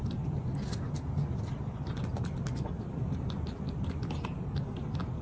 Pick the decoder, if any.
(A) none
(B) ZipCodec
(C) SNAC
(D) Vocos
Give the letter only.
A